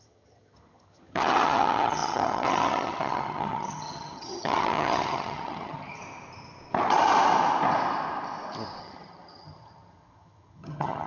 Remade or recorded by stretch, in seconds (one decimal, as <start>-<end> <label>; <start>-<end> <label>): 0.0-6.0 remade; 6.0-8.8 recorded; 8.8-11.1 remade